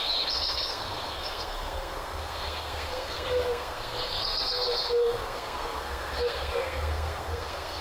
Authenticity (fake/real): fake